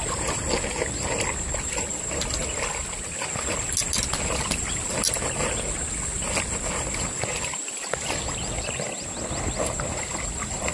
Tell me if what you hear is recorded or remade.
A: recorded